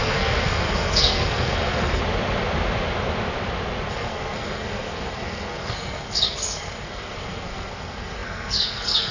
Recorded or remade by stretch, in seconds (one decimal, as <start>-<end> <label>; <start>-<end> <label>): 0.0-2.0 remade; 2.0-3.9 recorded; 3.9-9.1 remade